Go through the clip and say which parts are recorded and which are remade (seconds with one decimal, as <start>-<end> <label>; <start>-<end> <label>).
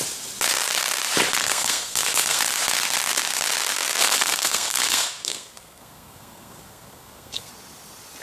0.0-1.4 recorded; 1.4-2.4 remade; 2.4-4.0 recorded; 4.0-7.5 remade; 7.5-8.2 recorded